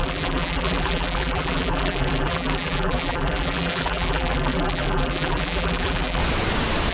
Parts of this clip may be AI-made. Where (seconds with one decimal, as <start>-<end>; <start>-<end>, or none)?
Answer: 0.0-6.2